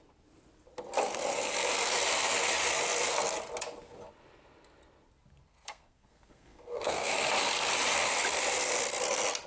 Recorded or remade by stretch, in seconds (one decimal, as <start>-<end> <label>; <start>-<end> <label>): 0.0-5.5 recorded; 5.5-7.1 remade; 7.1-9.5 recorded